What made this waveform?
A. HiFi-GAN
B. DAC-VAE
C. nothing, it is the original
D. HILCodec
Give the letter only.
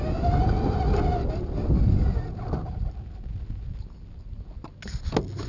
C